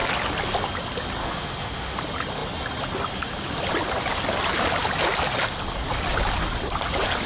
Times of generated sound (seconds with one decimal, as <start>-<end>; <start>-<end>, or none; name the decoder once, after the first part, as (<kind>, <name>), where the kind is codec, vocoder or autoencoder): 1.2-2.0 (autoencoder, DAC-VAE)